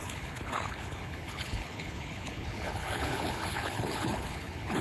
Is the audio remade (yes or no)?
yes